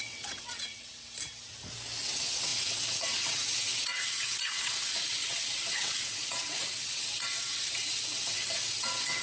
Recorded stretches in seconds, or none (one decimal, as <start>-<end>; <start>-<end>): 0.9-2.0